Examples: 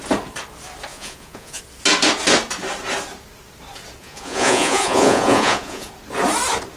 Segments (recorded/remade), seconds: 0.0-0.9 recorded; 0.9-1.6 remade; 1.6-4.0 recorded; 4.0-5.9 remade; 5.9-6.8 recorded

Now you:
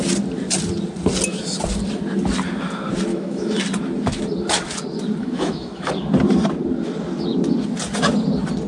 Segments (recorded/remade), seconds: 0.0-3.1 recorded; 3.1-3.6 remade; 3.6-5.2 recorded; 5.2-5.9 remade; 5.9-8.7 recorded

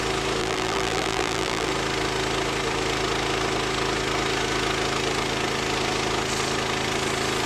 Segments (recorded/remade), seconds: 0.0-0.4 recorded; 0.4-1.7 remade; 1.7-7.5 recorded

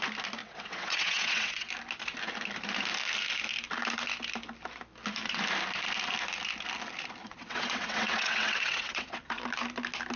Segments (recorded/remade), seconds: 0.0-0.4 recorded; 0.4-1.7 remade; 1.7-7.2 recorded; 7.2-9.4 remade; 9.4-10.2 recorded

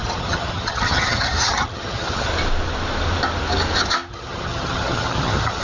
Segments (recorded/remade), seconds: 0.0-2.3 remade; 2.3-4.1 recorded; 4.1-5.6 remade

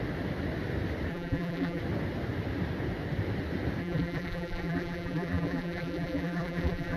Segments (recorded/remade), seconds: 0.0-1.1 recorded; 1.1-1.8 remade; 1.8-3.8 recorded; 3.8-7.0 remade

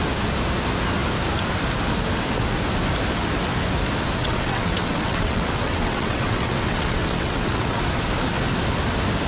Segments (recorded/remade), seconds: 0.0-4.2 recorded; 4.2-7.8 remade; 7.8-9.3 recorded